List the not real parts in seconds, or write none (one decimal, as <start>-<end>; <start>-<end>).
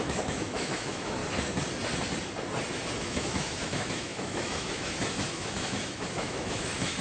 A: 0.0-1.2; 3.0-7.0